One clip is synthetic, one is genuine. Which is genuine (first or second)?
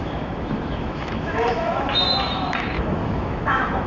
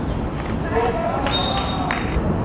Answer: second